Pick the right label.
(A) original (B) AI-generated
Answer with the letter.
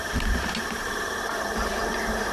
B